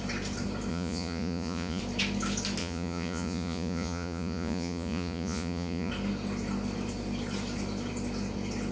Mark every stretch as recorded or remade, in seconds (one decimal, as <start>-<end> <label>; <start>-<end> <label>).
0.0-0.7 recorded; 0.7-1.8 remade; 1.8-2.6 recorded; 2.6-5.9 remade; 5.9-8.7 recorded

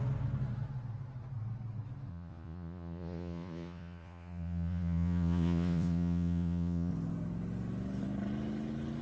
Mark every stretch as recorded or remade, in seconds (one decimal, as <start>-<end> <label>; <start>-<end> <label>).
0.0-2.1 recorded; 2.1-6.9 remade; 6.9-9.0 recorded

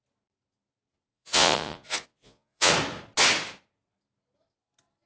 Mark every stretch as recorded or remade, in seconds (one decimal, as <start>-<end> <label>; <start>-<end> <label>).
0.0-1.1 recorded; 1.1-2.7 remade; 2.7-5.1 recorded